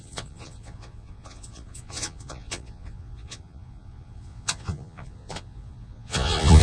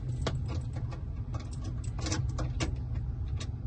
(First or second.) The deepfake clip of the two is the first